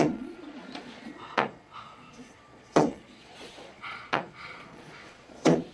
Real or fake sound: fake